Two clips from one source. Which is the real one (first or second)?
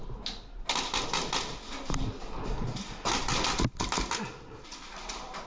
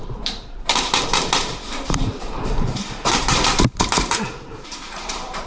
first